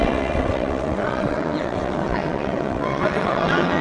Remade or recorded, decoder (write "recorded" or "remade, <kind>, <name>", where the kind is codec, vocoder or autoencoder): remade, vocoder, WaveNeXt